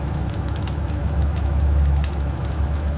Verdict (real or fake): fake